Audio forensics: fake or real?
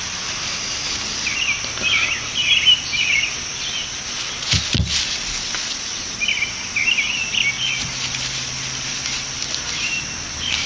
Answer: real